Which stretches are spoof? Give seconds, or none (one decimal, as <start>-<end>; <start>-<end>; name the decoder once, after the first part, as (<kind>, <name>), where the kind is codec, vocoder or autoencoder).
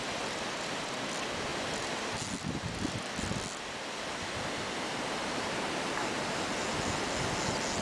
none